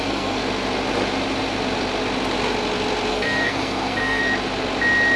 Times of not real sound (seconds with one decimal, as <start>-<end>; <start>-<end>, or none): 0.0-0.4; 3.1-4.2